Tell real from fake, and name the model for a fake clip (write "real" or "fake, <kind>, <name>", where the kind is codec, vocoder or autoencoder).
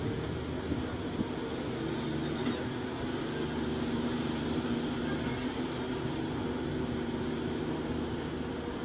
real